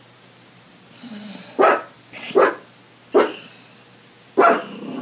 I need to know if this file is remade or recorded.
recorded